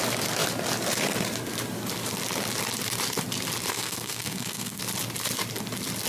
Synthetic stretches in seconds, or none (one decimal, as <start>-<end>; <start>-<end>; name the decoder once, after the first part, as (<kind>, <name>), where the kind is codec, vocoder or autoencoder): 3.7-4.8 (codec, SNAC)